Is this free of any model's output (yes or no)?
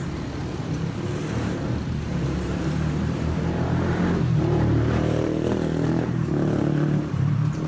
no